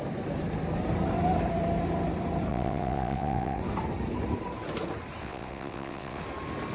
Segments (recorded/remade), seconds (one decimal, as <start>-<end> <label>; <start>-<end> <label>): 0.0-2.5 recorded; 2.5-3.6 remade; 3.6-5.2 recorded; 5.2-6.2 remade; 6.2-6.7 recorded